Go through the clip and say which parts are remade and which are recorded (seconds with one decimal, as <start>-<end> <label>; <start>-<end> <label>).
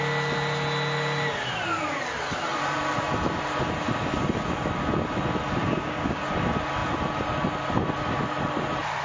0.0-5.6 recorded; 5.6-6.2 remade; 6.2-9.0 recorded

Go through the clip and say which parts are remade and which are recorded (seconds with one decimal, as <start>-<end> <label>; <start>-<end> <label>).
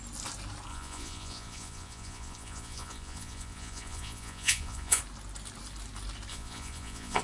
0.0-0.7 recorded; 0.7-5.0 remade; 5.0-6.3 recorded; 6.3-7.2 remade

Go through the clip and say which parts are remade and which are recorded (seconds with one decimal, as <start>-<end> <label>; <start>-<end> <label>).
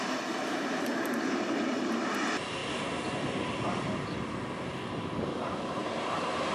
0.0-2.6 remade; 2.6-4.9 recorded; 4.9-6.5 remade